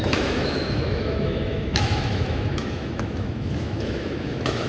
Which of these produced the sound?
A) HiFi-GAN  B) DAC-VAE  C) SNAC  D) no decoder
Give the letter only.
B